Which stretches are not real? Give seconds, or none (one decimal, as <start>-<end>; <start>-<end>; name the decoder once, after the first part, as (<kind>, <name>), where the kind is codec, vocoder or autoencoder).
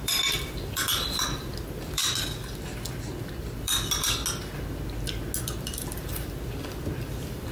0.0-2.0 (vocoder, BigVGAN v2); 3.6-4.2; 5.4-7.5